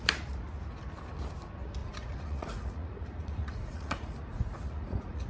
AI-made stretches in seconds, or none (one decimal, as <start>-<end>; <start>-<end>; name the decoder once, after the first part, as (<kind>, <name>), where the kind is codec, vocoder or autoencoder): 1.8-5.3 (vocoder, Vocos)